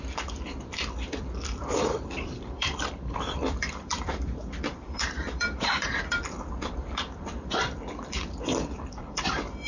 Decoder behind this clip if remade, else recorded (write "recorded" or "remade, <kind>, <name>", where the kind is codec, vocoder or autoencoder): remade, vocoder, BigVGAN v2